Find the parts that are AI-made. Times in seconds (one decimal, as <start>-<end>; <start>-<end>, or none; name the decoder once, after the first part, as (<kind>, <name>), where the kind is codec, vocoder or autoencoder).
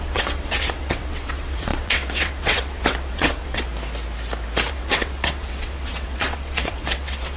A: 0.0-3.7 (vocoder, WaveNeXt); 4.7-7.4